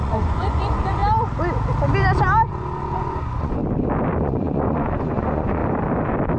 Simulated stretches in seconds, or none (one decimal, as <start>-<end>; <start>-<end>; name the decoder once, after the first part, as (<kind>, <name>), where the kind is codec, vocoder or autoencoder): 0.0-1.0 (vocoder, Vocos); 2.5-3.6; 4.2-5.6